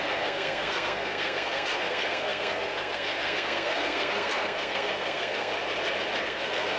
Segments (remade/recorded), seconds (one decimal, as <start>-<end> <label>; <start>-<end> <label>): 0.0-5.5 remade; 5.5-6.2 recorded; 6.2-6.8 remade

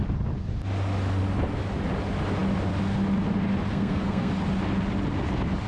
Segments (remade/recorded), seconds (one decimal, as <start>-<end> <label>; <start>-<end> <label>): 0.0-3.7 recorded; 3.7-4.3 remade; 4.3-5.7 recorded

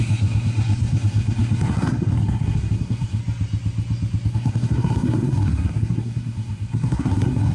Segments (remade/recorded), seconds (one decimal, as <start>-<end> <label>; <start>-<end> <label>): 0.0-3.2 remade; 3.2-4.3 recorded; 4.3-7.5 remade

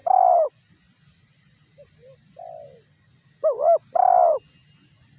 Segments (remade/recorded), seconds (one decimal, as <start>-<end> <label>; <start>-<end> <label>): 0.0-5.2 recorded

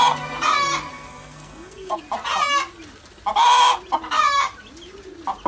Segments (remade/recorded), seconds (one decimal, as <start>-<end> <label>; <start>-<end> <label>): 0.0-0.9 recorded; 0.9-2.0 remade; 2.0-5.5 recorded

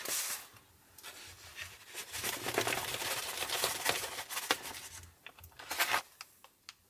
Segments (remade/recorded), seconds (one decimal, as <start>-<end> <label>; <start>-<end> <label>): 0.0-6.9 recorded

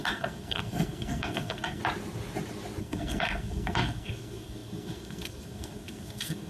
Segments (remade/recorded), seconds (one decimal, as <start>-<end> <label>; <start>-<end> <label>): 0.0-1.8 remade; 1.8-2.8 recorded; 2.8-6.5 remade